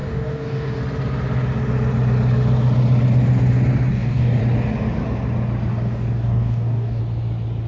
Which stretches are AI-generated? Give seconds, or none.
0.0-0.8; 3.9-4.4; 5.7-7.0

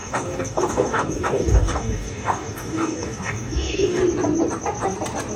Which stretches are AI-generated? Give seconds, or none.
0.0-4.0

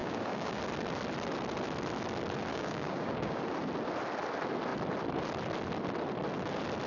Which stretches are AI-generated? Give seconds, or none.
0.0-0.6; 2.5-3.4

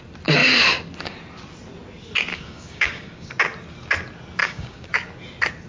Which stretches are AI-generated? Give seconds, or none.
2.3-3.3; 4.4-4.9

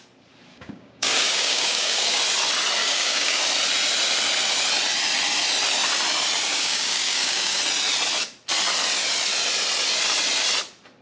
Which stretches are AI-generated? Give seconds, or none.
0.5-2.2; 2.8-3.4; 6.5-7.6

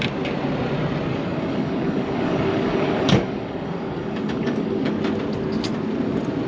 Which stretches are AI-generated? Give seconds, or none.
1.1-5.0

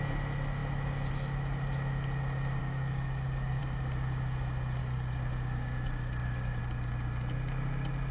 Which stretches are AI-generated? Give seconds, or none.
2.6-3.6; 4.8-6.6